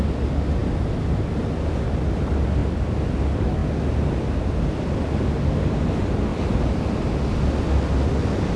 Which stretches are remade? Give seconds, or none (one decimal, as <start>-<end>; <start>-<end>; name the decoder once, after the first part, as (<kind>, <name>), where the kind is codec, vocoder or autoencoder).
0.6-1.4 (vocoder, BigVGAN v2); 2.6-3.2; 6.3-7.0